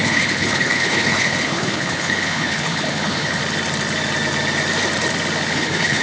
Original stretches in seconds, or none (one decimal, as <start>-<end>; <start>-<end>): 3.4-5.5